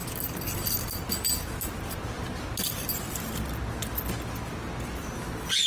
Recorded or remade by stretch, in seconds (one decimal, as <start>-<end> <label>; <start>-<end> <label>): 0.0-5.7 recorded